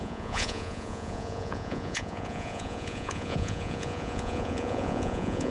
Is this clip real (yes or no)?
no